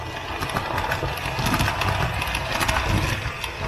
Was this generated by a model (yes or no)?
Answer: no